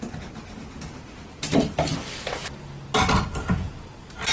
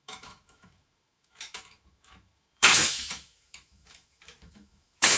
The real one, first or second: first